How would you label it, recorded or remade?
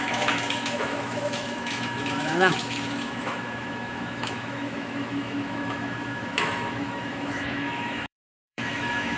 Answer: remade